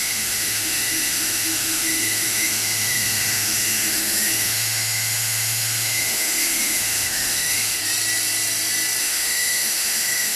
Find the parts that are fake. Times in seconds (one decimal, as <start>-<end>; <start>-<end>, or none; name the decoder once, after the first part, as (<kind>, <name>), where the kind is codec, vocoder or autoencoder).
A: 0.0-7.8 (autoencoder, DAC-VAE); 9.0-10.4